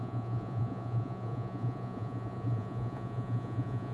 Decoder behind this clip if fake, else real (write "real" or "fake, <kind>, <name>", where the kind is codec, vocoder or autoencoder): fake, vocoder, Vocos